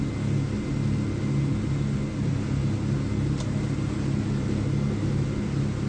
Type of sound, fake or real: real